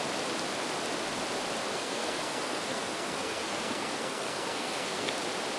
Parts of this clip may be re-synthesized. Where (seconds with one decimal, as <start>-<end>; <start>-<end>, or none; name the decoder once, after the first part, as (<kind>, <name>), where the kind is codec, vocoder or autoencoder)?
1.7-5.1 (codec, SNAC)